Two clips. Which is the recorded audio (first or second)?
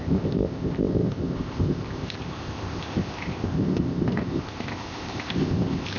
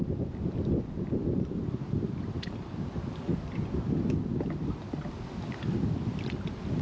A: second